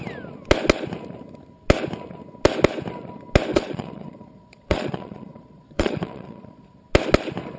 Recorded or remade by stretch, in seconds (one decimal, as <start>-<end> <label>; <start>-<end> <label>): 0.0-3.5 recorded; 3.5-6.8 remade; 6.8-7.6 recorded